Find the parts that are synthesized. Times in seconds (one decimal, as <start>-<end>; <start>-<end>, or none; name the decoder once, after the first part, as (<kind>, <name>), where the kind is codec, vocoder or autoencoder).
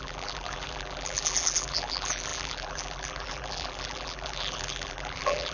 0.0-5.5 (vocoder, BigVGAN v2)